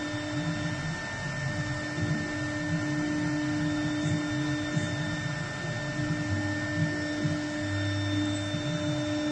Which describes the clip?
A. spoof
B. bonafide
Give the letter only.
B